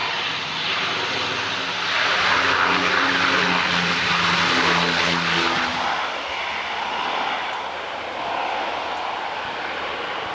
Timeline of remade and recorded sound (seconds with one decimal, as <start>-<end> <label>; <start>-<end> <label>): 0.0-10.3 recorded